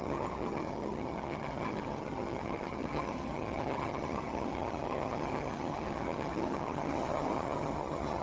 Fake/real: fake